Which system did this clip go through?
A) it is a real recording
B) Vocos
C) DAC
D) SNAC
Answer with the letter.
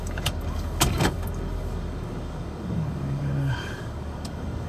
C